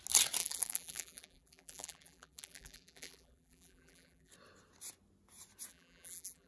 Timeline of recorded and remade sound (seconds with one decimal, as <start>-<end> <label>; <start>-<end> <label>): 0.0-0.4 recorded; 0.4-4.3 remade; 4.3-5.7 recorded; 5.7-6.5 remade